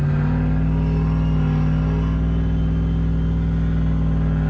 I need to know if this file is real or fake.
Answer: real